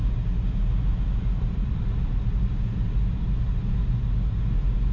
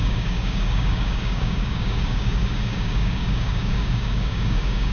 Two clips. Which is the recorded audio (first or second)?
first